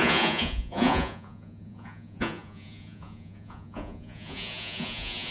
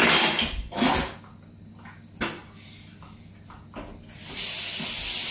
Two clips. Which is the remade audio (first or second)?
first